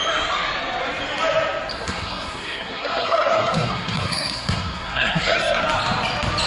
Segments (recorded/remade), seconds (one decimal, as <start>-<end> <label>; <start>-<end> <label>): 0.0-1.7 recorded; 1.7-5.6 remade; 5.6-6.5 recorded